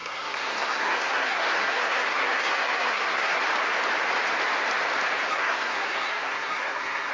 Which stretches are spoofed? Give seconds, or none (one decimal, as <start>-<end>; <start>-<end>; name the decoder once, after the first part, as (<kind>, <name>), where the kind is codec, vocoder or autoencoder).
0.0-3.4 (codec, SNAC); 5.3-7.1